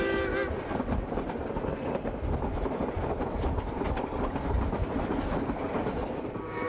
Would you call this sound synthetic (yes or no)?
no